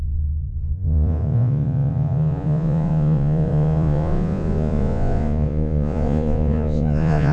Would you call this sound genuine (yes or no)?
no